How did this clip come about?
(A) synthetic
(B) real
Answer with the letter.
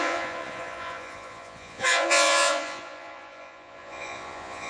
A